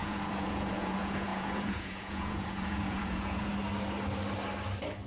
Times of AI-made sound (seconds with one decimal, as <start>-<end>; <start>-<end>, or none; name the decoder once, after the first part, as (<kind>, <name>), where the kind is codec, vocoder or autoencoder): 0.0-3.5 (vocoder, Vocos)

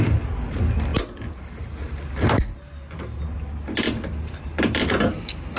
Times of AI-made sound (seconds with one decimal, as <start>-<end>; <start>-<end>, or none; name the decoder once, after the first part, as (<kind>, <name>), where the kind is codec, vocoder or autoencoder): none

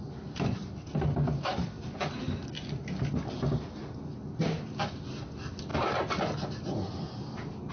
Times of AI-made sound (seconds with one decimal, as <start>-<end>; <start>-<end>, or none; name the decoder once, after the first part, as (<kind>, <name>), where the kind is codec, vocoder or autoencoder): none

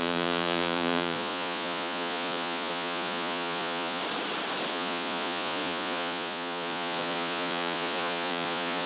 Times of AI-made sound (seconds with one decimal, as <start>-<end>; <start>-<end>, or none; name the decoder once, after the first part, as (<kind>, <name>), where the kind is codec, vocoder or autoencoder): 0.0-4.0 (vocoder, Vocos); 4.7-8.9

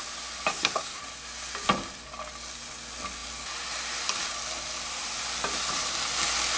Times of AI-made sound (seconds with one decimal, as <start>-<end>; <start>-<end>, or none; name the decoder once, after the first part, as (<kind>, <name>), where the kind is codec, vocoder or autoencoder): 0.5-1.0 (codec, SNAC)